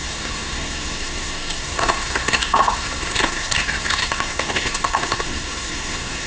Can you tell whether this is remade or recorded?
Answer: remade